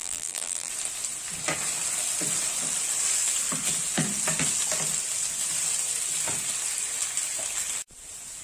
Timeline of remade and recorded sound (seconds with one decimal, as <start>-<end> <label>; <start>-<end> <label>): 0.0-0.7 remade; 0.7-8.4 recorded